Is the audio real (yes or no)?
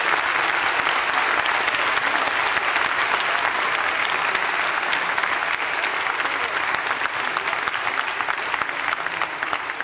yes